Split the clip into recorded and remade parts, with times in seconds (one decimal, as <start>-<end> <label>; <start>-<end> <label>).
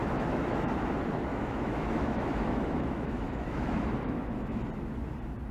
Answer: 0.0-0.7 remade; 0.7-1.3 recorded; 1.3-4.6 remade; 4.6-5.5 recorded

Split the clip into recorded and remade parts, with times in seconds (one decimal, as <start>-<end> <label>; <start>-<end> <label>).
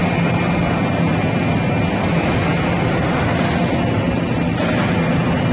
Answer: 0.0-5.5 recorded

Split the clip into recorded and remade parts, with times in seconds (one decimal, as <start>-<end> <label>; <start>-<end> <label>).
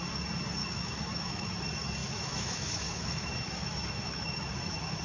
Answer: 0.0-0.6 recorded; 0.6-1.5 remade; 1.5-2.0 recorded; 2.0-5.0 remade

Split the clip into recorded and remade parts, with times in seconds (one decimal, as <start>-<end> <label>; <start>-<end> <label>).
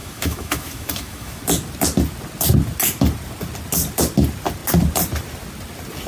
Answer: 0.0-1.4 remade; 1.4-6.1 recorded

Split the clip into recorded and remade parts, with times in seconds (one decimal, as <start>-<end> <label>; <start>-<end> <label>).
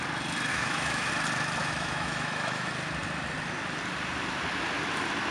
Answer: 0.0-0.5 recorded; 0.5-1.1 remade; 1.1-1.6 recorded; 1.6-2.7 remade; 2.7-5.3 recorded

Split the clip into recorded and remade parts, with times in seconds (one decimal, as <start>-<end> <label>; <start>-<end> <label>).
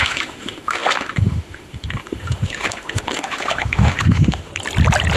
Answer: 0.0-4.5 remade; 4.5-5.2 recorded